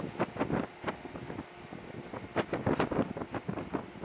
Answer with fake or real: real